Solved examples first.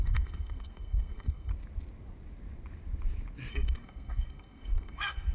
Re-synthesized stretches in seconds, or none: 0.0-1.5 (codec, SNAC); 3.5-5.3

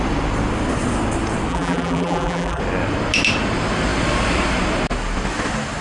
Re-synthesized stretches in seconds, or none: 1.5-2.6 (vocoder, BigVGAN v2)